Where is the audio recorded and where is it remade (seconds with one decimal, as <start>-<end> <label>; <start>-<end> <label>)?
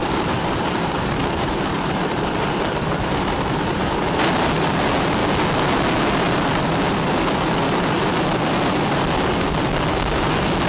0.0-4.2 remade; 4.2-10.7 recorded